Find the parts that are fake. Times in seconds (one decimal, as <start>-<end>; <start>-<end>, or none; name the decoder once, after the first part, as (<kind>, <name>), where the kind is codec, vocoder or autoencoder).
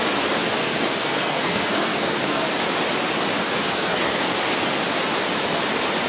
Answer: 0.6-2.5 (codec, SNAC); 3.4-4.3